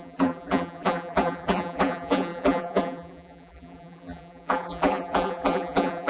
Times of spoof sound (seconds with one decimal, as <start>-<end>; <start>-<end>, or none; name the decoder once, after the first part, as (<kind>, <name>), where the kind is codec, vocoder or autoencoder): 0.0-6.1 (vocoder, BigVGAN v2)